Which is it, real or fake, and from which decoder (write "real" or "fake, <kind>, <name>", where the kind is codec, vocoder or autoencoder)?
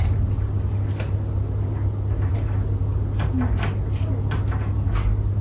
real